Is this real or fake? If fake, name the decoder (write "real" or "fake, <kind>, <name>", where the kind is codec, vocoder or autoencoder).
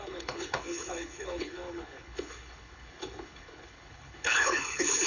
fake, codec, HILCodec